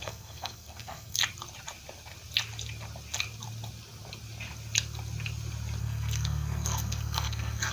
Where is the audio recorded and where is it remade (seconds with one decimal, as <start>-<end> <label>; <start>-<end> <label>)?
0.0-1.2 remade; 1.2-5.8 recorded; 5.8-7.7 remade